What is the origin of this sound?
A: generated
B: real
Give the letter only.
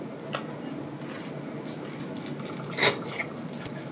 B